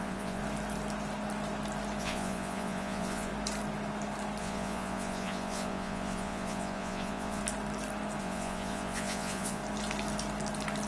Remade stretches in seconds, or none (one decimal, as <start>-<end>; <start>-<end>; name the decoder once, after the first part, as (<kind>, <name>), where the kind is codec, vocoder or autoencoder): 0.0-0.4 (vocoder, Vocos); 2.0-3.3; 4.4-7.4; 8.2-9.6